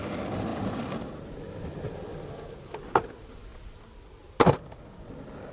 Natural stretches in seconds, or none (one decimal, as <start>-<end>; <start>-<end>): 0.0-5.5